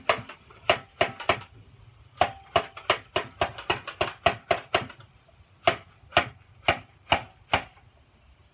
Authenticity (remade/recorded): recorded